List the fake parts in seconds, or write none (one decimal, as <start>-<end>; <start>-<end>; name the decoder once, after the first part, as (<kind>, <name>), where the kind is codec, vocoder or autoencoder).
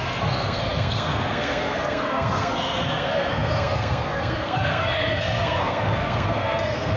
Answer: 0.0-7.0 (codec, SNAC)